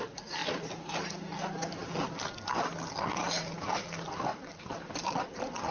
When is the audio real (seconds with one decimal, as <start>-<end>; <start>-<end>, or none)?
0.0-4.3; 4.9-5.7